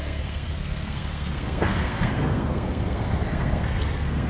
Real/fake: fake